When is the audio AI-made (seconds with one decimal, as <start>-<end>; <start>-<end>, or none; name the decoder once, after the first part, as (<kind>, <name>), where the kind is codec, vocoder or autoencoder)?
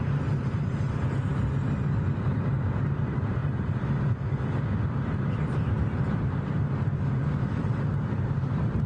0.0-3.4 (vocoder, BigVGAN v2); 4.9-8.9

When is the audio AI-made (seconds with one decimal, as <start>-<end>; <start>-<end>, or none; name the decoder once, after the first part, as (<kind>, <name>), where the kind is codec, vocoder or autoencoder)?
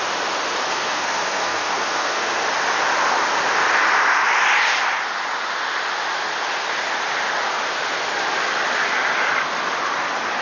0.7-2.4 (codec, SNAC)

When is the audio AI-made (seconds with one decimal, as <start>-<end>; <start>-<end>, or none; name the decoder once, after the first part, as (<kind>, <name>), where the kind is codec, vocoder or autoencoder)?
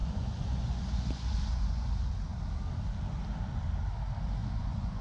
0.0-1.9 (vocoder, Vocos); 4.4-5.0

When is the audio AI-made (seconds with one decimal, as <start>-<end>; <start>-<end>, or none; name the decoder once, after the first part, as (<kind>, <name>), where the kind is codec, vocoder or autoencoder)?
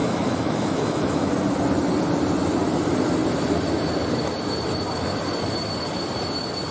0.0-1.3 (autoencoder, DAC-VAE)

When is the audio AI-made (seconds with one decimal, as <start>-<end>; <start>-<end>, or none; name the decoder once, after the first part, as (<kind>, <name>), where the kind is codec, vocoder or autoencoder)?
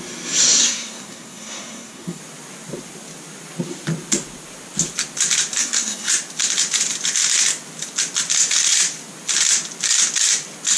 0.6-2.2 (codec, SNAC); 5.6-6.1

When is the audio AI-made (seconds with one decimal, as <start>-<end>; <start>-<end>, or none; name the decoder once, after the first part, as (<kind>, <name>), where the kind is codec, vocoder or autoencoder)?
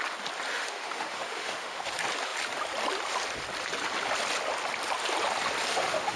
0.5-1.9 (autoencoder, DAC-VAE); 5.7-6.2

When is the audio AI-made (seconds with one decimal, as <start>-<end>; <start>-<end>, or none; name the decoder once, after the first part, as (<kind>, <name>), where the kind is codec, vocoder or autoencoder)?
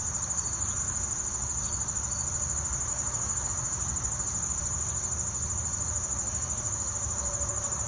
2.9-3.5 (codec, DAC)